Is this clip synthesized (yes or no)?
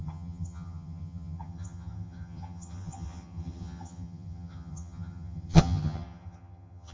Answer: yes